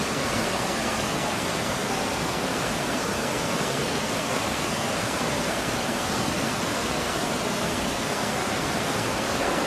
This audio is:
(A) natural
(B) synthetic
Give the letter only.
B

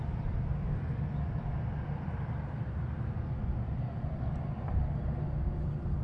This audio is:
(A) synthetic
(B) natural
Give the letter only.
B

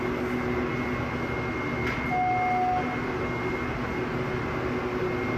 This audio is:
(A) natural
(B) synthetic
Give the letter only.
A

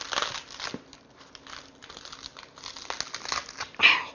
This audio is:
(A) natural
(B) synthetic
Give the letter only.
A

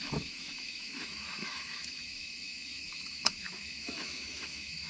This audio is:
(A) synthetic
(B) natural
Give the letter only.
A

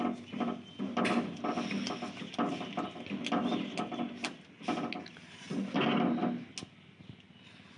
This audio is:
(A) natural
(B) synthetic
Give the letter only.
A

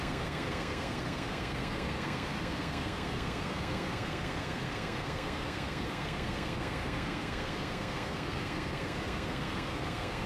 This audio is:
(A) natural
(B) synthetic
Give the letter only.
B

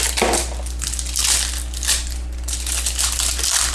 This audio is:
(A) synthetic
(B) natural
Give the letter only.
B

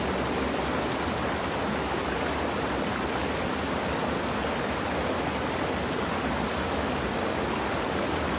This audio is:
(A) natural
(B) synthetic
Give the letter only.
A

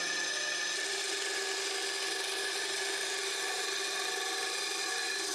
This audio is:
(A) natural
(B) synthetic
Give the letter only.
A